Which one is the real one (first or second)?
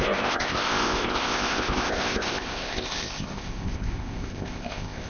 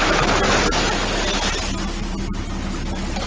second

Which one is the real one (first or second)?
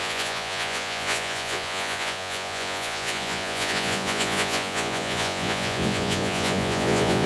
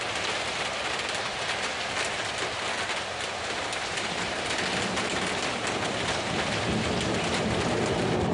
second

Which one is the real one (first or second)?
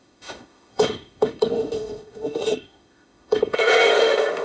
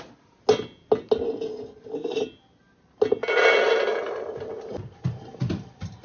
second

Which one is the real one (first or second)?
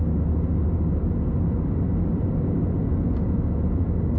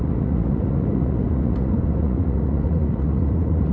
first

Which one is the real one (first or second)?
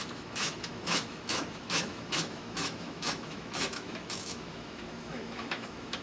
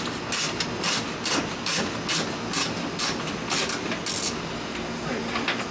second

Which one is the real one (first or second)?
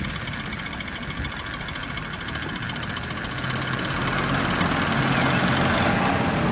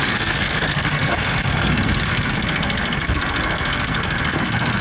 first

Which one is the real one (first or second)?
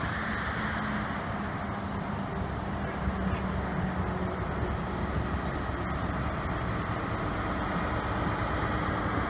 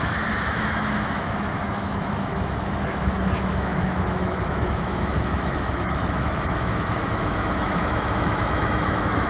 first